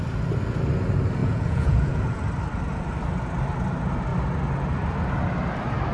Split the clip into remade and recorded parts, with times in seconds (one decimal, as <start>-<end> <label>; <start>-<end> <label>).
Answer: 0.0-1.2 recorded; 1.2-2.2 remade; 2.2-5.9 recorded